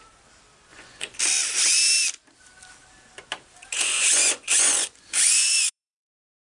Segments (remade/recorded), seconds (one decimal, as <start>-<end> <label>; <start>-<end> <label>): 0.0-0.7 recorded; 0.7-1.2 remade; 1.2-3.6 recorded; 3.6-6.1 remade; 6.1-6.5 recorded